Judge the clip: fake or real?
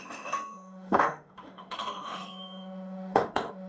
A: fake